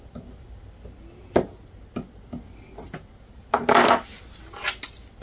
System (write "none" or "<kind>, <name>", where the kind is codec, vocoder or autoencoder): none